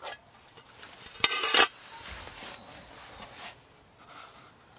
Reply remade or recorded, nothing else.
recorded